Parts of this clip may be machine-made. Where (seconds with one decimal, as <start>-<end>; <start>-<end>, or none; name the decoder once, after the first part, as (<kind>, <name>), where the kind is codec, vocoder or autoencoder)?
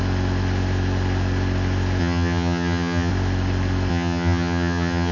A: 2.0-3.1 (vocoder, HiFi-GAN); 3.9-5.1